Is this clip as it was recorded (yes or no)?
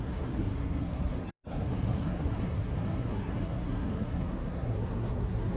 no